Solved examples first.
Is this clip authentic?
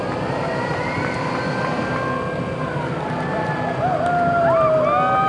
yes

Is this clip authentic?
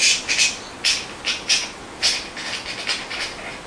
yes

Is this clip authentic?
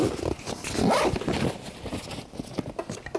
yes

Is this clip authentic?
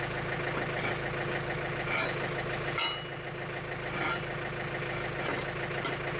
yes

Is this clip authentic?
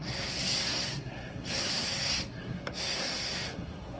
no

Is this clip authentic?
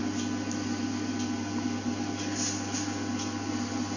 yes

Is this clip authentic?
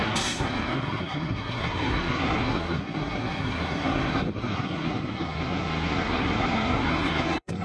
no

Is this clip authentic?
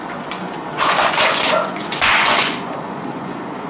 no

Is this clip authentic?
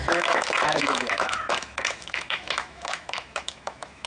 no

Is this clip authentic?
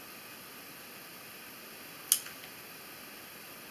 yes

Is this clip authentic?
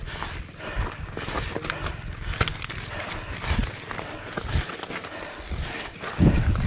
yes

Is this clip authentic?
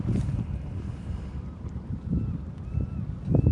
no